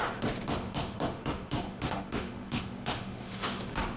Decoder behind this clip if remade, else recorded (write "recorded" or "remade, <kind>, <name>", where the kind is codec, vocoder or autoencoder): remade, autoencoder, DAC-VAE